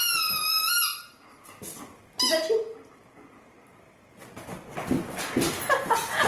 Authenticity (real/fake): real